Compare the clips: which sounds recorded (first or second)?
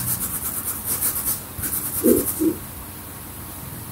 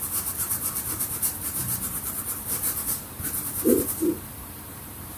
first